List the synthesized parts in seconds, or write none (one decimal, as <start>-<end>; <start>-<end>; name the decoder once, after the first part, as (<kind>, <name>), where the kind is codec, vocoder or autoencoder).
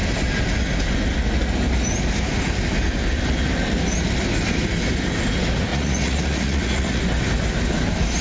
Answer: 5.7-7.0 (vocoder, Vocos)